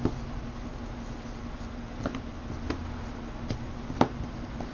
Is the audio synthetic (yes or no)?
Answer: no